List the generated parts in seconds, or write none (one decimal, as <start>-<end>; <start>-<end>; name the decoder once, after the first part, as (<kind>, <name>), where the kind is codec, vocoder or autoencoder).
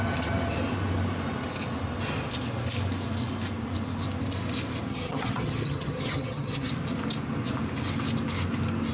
4.9-6.7 (vocoder, HiFi-GAN)